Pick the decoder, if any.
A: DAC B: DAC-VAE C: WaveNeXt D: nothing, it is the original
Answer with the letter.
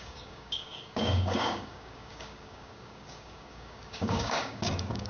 A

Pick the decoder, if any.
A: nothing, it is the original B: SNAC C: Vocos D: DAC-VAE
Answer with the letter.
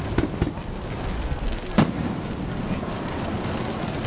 A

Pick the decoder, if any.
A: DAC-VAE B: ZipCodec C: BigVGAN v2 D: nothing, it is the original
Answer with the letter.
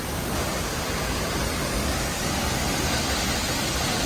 D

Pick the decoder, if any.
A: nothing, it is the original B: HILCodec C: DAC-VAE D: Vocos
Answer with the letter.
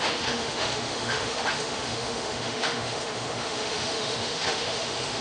C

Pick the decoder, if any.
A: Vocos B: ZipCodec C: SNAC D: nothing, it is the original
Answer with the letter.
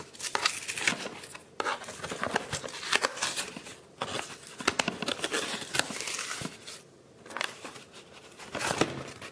D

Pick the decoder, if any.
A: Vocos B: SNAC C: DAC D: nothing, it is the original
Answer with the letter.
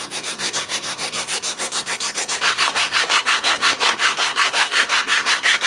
B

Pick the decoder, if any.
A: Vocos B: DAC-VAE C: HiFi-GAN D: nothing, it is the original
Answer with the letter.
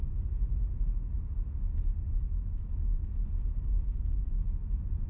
D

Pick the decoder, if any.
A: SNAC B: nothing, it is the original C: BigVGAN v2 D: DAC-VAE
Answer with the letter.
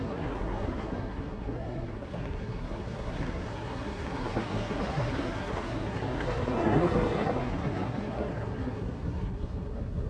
A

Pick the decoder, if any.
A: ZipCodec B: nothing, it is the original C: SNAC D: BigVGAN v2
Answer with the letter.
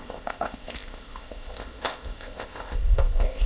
A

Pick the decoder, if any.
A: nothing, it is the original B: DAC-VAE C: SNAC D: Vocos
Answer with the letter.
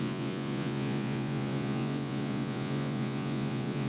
D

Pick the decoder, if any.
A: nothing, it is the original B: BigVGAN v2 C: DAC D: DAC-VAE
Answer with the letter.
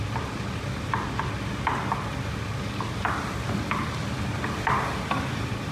A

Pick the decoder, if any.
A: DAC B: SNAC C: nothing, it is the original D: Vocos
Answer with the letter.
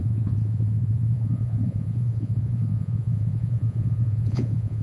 D